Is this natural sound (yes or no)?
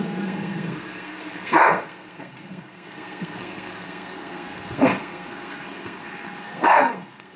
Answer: no